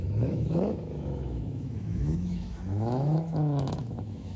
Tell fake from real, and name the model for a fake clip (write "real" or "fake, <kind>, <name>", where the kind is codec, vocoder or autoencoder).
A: fake, autoencoder, DAC-VAE